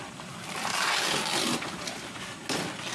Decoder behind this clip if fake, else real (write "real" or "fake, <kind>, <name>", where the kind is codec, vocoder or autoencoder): real